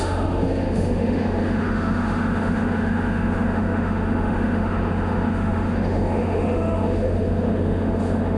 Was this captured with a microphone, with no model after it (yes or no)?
no